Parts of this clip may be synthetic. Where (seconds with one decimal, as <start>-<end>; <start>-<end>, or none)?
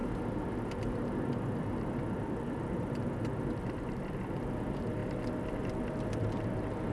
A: none